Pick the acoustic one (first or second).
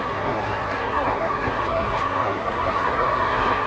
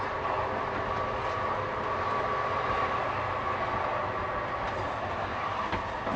second